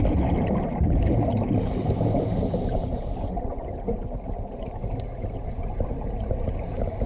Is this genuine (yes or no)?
yes